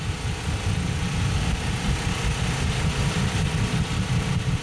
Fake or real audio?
real